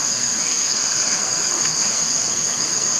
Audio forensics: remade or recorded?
remade